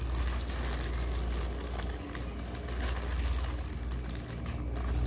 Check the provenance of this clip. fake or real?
real